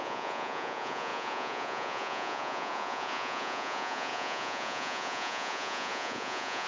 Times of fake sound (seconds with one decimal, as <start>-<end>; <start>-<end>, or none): 0.0-6.7